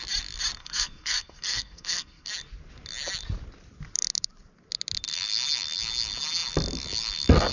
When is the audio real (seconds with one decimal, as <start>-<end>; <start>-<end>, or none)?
0.0-0.6; 2.3-7.5